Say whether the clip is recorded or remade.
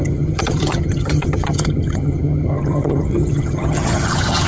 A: remade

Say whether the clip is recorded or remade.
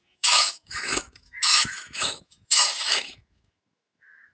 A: remade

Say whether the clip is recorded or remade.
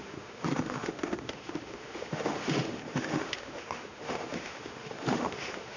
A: remade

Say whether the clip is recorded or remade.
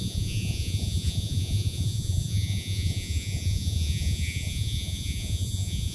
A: remade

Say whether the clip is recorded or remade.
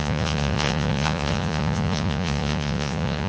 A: remade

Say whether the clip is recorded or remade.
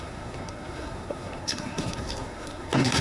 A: remade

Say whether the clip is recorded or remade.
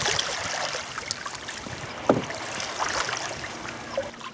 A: recorded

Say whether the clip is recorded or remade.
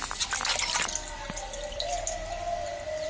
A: recorded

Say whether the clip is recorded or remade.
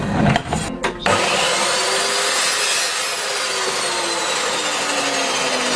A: recorded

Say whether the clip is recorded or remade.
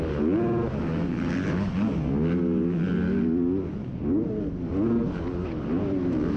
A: recorded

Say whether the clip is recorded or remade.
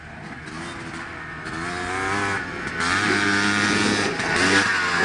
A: recorded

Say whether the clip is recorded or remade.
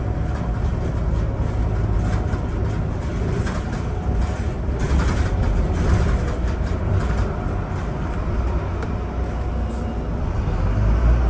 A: recorded